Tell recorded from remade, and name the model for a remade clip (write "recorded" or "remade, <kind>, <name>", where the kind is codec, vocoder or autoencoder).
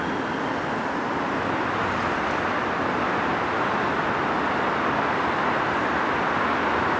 recorded